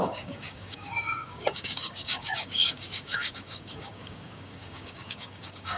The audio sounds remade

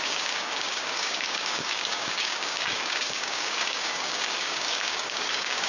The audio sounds remade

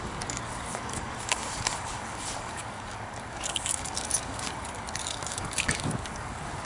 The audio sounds remade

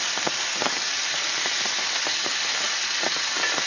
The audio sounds recorded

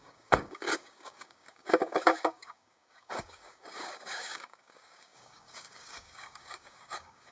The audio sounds remade